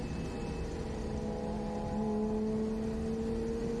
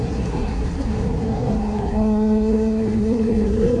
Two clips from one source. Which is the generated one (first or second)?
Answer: second